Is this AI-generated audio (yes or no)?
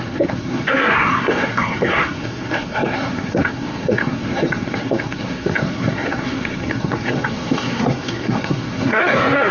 yes